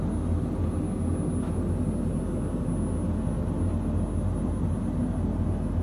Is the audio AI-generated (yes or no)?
no